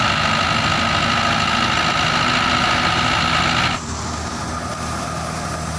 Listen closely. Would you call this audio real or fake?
real